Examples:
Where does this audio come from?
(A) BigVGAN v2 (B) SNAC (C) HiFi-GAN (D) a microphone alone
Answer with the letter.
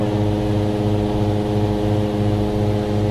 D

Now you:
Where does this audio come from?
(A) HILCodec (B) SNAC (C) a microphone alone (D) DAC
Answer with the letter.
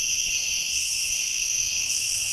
B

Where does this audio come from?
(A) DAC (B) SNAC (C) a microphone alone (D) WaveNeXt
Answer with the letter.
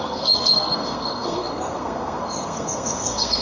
B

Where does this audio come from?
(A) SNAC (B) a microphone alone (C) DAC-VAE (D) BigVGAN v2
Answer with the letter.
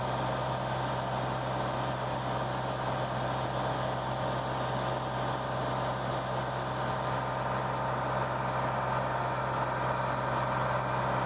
B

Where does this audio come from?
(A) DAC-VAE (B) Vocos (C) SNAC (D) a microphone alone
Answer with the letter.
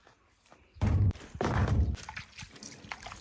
D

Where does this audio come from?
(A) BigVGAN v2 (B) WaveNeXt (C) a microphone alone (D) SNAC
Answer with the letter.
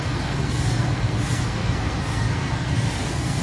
D